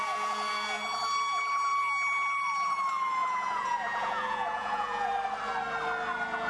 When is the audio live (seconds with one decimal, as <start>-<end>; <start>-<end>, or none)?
0.0-3.2; 5.1-6.5